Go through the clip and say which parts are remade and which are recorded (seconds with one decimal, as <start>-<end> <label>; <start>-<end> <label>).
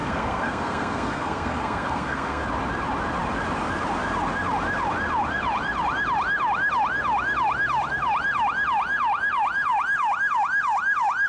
0.0-2.4 remade; 2.4-11.3 recorded